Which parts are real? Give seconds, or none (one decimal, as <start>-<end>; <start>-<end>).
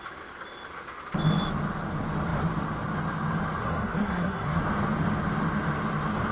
0.0-3.6; 4.6-6.3